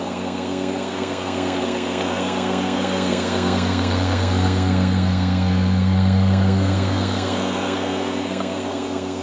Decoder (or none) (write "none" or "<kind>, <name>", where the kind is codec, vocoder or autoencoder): codec, SNAC